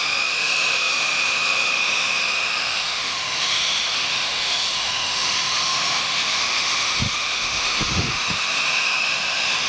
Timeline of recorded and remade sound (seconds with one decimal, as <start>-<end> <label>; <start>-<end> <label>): 0.0-9.7 remade